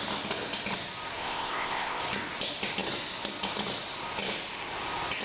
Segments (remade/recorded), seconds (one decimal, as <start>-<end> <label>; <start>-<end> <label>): 0.0-1.2 recorded; 1.2-2.0 remade; 2.0-5.2 recorded